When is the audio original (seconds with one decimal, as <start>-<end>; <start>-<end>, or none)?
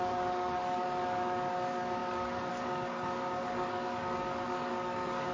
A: none